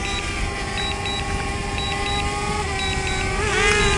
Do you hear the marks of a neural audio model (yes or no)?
no